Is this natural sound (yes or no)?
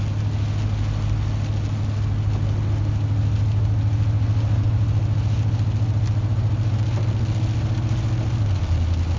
yes